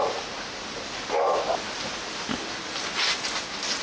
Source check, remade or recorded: recorded